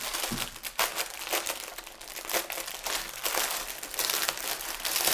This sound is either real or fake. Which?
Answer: real